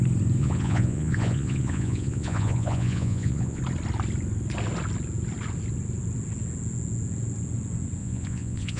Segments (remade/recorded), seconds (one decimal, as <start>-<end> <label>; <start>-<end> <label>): 0.0-0.4 recorded; 0.4-3.6 remade; 3.6-8.0 recorded; 8.0-8.8 remade